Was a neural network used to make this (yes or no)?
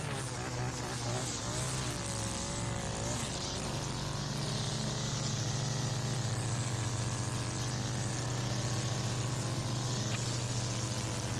no